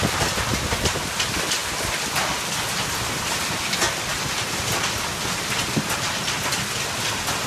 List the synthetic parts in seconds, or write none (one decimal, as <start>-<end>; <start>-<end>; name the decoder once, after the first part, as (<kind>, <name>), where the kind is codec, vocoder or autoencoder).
none